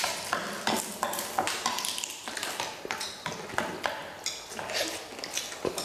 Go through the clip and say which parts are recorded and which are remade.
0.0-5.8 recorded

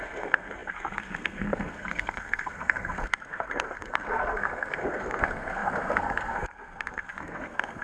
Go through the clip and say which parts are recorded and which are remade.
0.0-7.8 remade

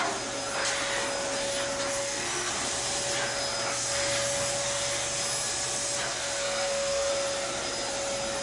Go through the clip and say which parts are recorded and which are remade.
0.0-2.0 recorded; 2.0-2.5 remade; 2.5-6.1 recorded; 6.1-7.1 remade; 7.1-8.4 recorded

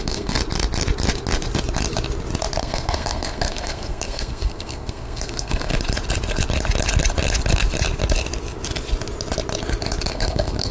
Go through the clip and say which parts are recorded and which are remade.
0.0-0.4 remade; 0.4-2.6 recorded; 2.6-5.7 remade; 5.7-10.1 recorded; 10.1-10.7 remade

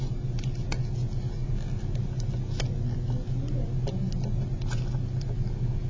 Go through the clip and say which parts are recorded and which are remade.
0.0-5.9 recorded